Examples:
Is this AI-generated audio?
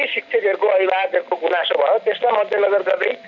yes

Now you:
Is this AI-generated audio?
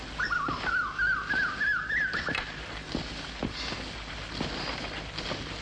no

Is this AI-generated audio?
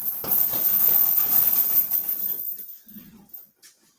no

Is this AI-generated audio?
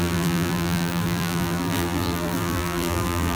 yes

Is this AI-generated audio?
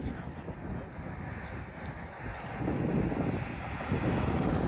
no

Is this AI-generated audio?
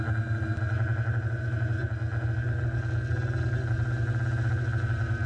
no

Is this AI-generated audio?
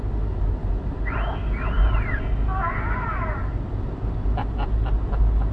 no